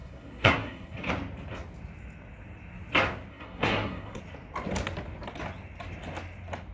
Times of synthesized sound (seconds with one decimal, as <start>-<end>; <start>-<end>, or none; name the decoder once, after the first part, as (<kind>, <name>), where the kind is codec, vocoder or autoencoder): 0.0-1.1 (codec, SNAC); 3.3-4.2